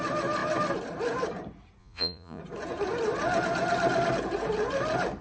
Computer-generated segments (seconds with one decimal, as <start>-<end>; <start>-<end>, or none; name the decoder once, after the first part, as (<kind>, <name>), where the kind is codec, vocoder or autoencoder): 1.8-2.4 (vocoder, Vocos)

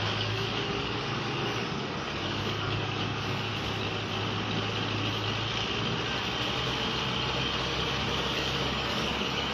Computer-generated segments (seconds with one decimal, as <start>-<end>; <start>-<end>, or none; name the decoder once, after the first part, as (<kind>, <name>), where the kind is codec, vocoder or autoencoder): 0.0-3.5 (codec, DAC); 7.6-9.5

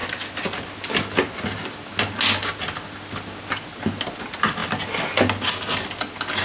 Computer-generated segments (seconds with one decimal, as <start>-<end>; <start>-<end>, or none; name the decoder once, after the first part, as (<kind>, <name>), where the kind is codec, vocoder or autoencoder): none

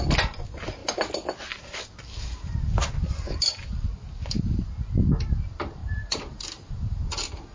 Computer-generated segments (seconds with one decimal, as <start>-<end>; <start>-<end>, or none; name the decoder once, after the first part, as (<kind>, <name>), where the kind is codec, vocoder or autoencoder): 5.8-6.7 (vocoder, BigVGAN v2)